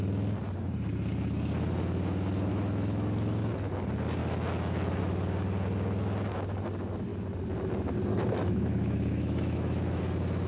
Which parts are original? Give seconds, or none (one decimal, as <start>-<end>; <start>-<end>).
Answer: 0.0-2.5; 3.7-8.1; 10.0-10.5